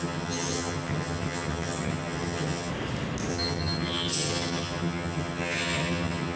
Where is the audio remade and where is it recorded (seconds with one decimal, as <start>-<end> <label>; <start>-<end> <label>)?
0.0-2.7 remade; 2.7-3.3 recorded; 3.3-6.4 remade